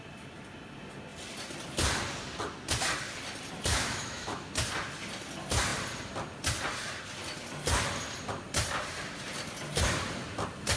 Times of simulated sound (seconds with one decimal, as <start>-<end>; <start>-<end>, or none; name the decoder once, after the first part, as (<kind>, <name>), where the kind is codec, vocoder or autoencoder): 3.7-4.5 (autoencoder, DAC-VAE)